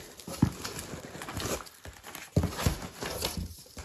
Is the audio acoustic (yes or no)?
yes